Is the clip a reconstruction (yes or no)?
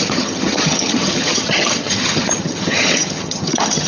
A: yes